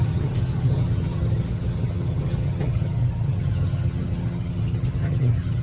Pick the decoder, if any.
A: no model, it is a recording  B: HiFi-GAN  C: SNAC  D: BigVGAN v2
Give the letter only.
B